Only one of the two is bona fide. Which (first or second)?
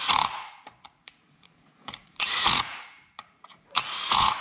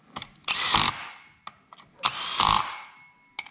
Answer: second